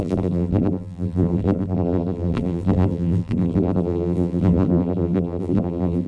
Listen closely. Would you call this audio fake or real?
fake